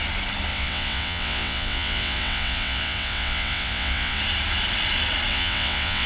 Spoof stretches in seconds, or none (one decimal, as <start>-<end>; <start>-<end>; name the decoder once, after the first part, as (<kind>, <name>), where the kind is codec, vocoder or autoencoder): 0.5-4.2 (vocoder, WaveNeXt); 5.3-6.1